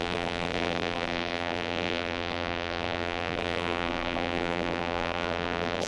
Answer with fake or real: fake